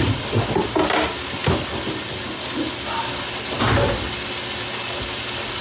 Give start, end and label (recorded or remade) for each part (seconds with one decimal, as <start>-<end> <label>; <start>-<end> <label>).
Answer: 0.0-5.6 recorded